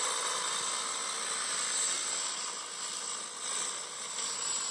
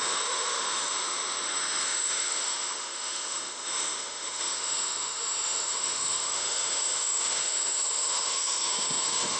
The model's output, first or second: second